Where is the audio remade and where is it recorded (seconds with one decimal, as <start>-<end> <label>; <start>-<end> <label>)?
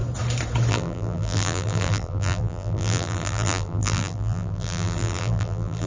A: 0.0-0.7 recorded; 0.7-5.9 remade